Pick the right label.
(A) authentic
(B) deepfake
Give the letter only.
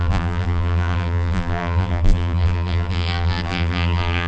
B